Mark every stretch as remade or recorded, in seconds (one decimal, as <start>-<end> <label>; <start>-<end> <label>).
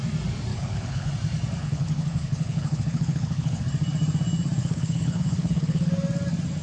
0.0-0.5 recorded; 0.5-1.1 remade; 1.1-1.6 recorded; 1.6-3.6 remade; 3.6-4.6 recorded; 4.6-5.9 remade; 5.9-6.6 recorded